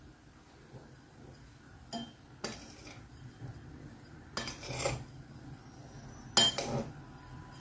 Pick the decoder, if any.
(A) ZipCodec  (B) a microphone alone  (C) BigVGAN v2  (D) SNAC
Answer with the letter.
B